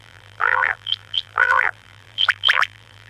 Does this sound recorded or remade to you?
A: remade